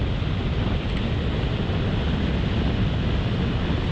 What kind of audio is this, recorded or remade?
recorded